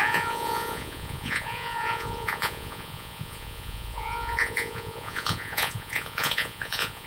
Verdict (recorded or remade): remade